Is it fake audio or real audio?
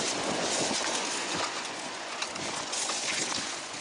fake